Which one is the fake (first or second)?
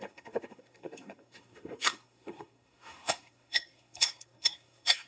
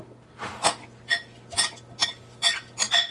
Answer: first